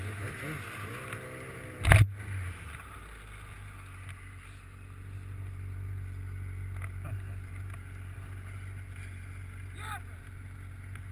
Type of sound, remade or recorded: recorded